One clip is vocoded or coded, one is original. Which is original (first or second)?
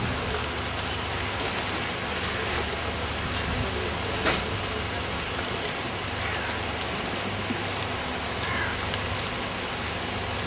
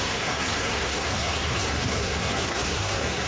first